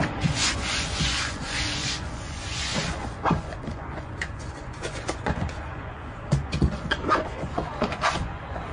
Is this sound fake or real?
fake